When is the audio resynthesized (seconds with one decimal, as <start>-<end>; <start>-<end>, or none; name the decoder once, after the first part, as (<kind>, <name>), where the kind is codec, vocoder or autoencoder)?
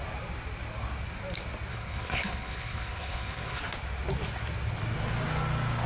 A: 1.7-3.6 (codec, HILCodec)